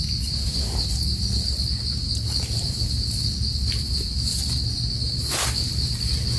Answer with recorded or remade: recorded